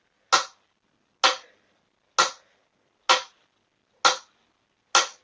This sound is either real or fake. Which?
real